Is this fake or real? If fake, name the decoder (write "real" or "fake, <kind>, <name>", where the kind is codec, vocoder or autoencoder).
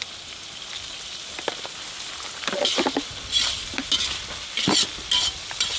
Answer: real